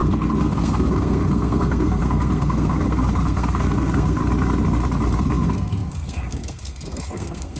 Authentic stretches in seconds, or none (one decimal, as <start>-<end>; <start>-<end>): 4.2-5.2